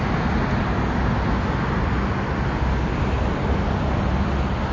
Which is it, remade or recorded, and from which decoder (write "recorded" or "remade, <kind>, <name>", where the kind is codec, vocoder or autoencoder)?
recorded